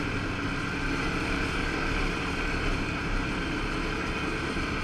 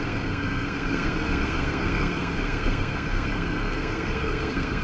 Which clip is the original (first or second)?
first